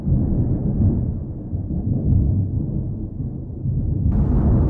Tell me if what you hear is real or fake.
real